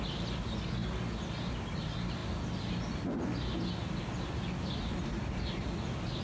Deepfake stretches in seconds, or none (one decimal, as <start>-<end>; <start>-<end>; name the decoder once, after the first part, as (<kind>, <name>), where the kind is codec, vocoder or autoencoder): none